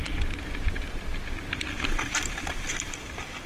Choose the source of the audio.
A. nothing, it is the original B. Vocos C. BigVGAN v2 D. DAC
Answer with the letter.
A